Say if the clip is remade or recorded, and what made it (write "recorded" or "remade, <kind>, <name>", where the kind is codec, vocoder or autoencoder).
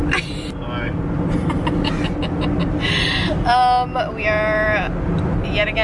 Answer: recorded